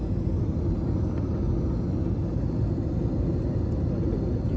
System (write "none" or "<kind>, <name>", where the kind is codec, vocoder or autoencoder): none